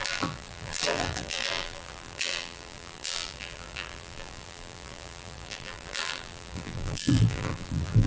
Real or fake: fake